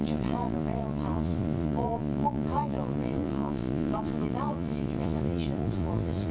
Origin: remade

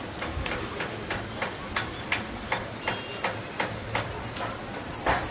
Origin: recorded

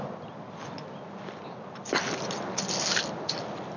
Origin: recorded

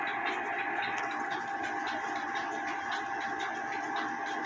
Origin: recorded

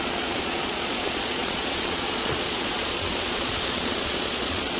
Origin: remade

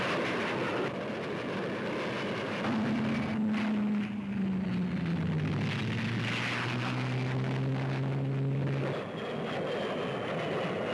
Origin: recorded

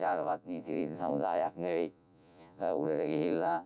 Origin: remade